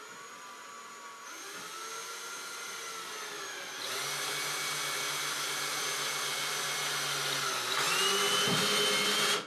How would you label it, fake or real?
real